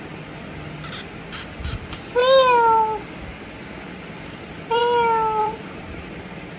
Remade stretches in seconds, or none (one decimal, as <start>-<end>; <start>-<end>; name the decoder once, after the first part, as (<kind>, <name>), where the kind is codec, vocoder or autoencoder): 0.0-2.2 (vocoder, BigVGAN v2); 3.6-4.8; 5.4-6.6